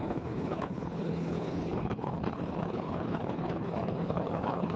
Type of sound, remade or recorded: remade